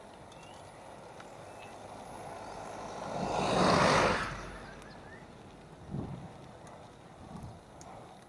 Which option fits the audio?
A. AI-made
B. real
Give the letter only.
B